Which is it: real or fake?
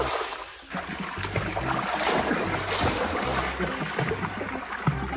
real